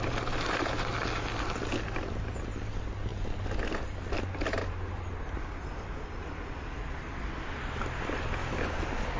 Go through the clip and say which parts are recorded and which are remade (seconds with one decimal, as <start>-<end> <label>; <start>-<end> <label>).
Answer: 0.0-9.2 recorded